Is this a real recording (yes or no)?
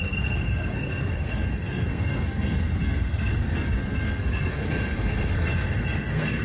no